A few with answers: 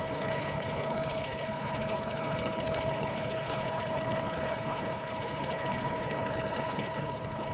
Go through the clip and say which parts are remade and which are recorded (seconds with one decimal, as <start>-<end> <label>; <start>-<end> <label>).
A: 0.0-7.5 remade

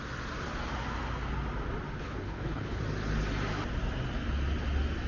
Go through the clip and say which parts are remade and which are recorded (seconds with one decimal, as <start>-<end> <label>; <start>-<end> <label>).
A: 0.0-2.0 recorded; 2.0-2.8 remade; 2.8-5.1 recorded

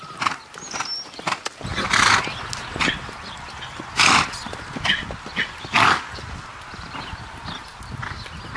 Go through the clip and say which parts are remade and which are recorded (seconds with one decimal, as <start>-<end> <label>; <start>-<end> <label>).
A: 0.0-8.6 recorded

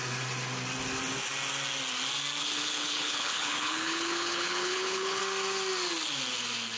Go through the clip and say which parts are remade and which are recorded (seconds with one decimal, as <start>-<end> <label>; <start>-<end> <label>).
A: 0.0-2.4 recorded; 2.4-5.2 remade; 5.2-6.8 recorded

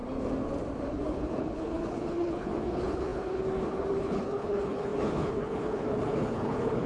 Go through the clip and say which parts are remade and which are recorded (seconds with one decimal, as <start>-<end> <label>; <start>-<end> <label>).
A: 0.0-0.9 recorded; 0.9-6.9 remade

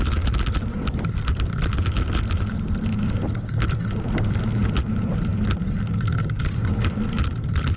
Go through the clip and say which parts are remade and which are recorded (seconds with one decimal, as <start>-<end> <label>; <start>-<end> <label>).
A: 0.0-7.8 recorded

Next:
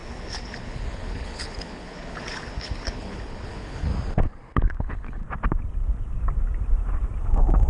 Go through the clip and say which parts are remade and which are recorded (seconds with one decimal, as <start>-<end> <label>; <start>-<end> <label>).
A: 0.0-3.9 remade; 3.9-4.8 recorded; 4.8-5.2 remade; 5.2-7.7 recorded